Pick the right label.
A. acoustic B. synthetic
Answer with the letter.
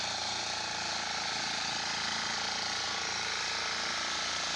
A